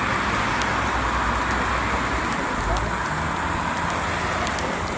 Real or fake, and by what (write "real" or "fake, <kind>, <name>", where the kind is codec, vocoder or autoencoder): real